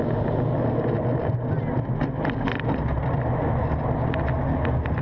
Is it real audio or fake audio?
real